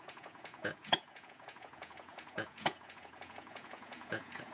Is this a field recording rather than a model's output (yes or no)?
no